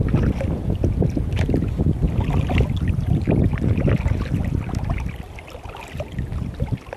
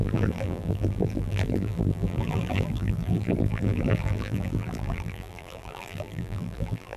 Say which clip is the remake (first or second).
second